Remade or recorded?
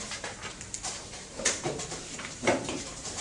remade